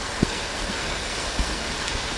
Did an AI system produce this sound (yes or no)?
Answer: yes